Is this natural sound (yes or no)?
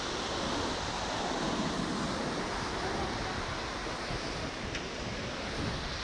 yes